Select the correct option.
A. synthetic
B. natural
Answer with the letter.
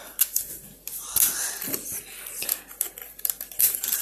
B